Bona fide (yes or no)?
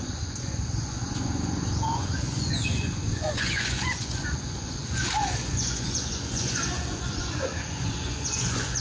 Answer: no